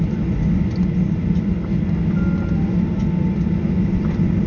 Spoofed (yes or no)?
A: no